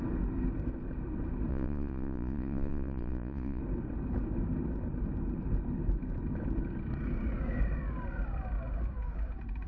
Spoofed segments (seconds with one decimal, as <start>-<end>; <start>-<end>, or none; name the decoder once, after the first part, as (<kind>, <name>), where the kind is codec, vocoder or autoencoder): 1.5-3.6 (vocoder, Vocos)